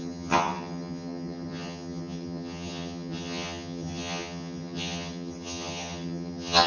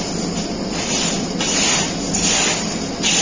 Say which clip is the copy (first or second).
first